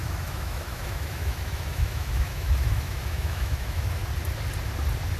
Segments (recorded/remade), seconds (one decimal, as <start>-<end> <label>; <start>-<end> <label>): 0.0-4.0 remade; 4.0-5.2 recorded